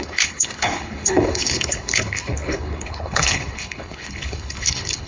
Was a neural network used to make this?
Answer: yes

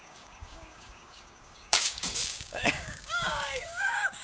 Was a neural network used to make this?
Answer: yes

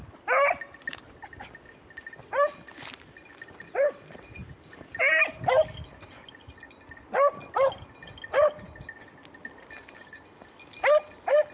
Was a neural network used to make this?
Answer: no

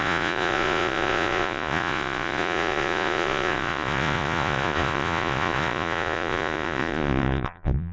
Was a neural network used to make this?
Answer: yes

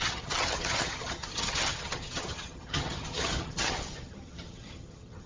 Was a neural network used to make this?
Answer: yes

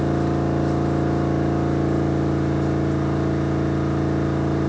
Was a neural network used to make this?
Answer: no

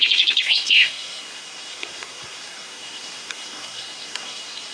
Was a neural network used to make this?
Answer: yes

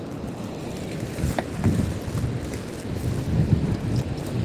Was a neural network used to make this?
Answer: no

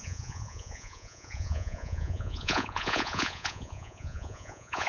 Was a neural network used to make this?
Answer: yes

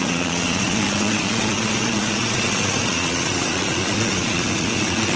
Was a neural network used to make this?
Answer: yes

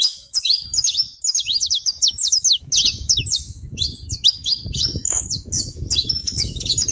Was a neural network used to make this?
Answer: yes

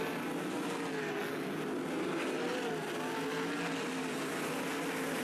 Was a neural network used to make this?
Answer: no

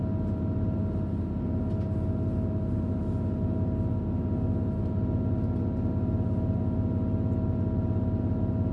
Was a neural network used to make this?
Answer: no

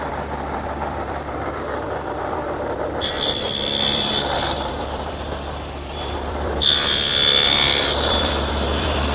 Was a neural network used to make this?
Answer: yes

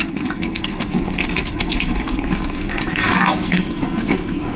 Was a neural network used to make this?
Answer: yes